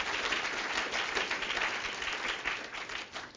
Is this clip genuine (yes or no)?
yes